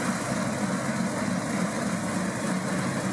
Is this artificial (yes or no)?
no